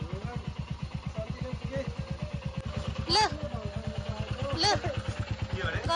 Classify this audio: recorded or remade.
recorded